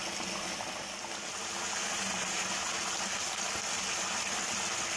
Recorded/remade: recorded